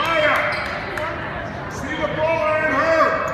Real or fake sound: real